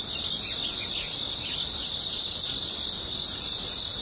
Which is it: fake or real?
real